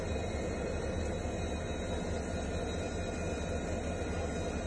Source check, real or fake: real